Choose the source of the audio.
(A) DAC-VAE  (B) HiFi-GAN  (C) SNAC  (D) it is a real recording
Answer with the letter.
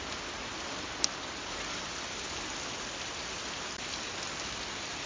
D